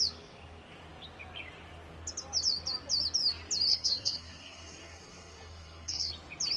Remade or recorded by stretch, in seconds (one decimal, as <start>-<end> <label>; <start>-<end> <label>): 0.0-3.7 recorded; 3.7-6.1 remade; 6.1-6.6 recorded